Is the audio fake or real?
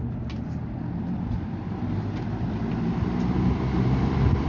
fake